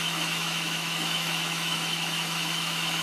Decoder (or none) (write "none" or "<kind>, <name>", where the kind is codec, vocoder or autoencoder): autoencoder, DAC-VAE